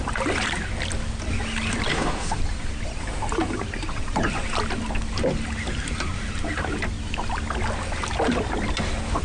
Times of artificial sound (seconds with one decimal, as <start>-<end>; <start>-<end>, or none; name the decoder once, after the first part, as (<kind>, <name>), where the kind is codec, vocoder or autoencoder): 1.9-2.4 (autoencoder, DAC-VAE)